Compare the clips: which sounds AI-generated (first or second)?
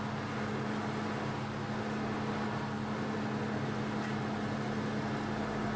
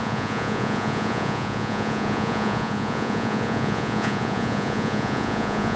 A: second